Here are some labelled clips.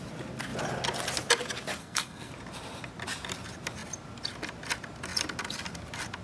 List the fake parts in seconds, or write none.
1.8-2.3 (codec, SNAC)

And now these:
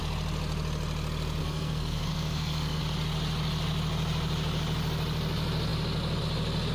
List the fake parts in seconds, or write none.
1.4-2.8 (codec, SNAC)

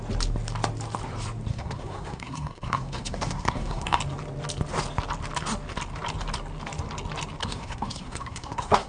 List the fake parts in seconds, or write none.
1.5-4.0 (codec, SNAC); 7.4-8.9

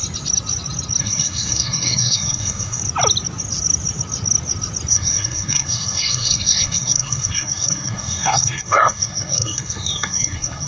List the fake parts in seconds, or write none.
1.0-2.8 (codec, SNAC); 4.9-10.7

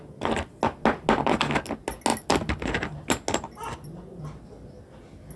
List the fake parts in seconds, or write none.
none

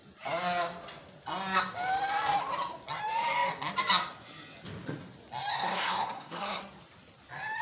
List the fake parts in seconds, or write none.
5.5-6.6 (codec, SNAC)

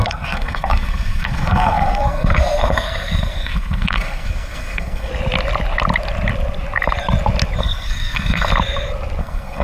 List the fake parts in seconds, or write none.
0.0-5.1 (codec, SNAC); 7.6-8.5; 9.2-9.6